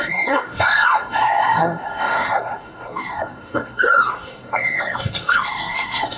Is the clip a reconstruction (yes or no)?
yes